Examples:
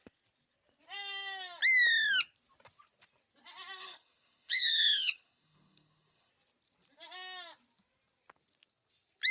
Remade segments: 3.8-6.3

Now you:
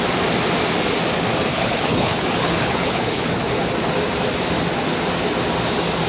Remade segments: 1.5-3.7

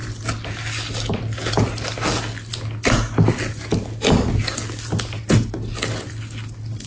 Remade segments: none

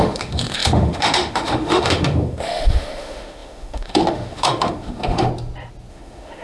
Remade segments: 0.0-5.3; 5.9-6.4

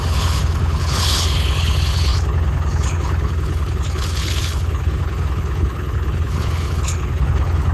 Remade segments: 0.0-7.7